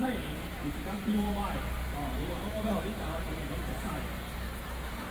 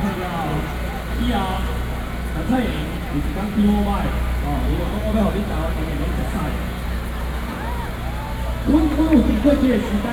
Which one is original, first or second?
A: second